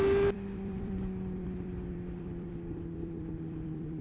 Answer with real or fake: fake